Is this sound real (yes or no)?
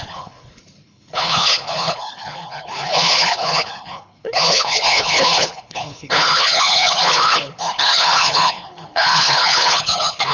no